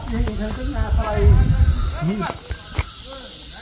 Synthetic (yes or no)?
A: no